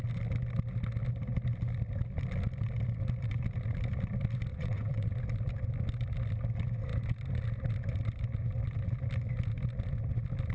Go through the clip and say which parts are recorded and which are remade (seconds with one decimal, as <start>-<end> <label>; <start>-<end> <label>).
0.0-4.5 recorded; 4.5-5.1 remade; 5.1-10.5 recorded